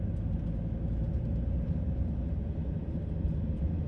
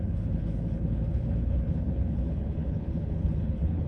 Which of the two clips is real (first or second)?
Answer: first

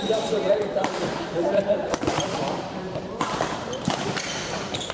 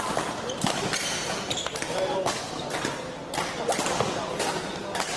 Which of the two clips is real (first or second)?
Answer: second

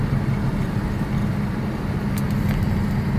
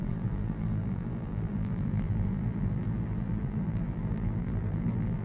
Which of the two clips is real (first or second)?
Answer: first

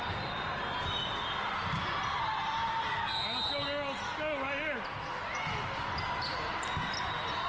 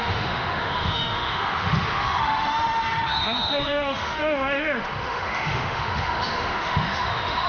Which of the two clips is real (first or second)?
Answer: first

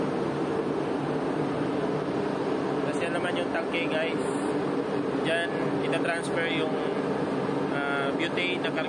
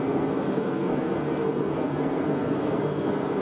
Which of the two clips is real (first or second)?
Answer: first